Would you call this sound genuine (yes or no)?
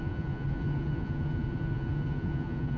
no